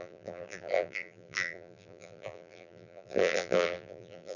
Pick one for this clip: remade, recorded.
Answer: remade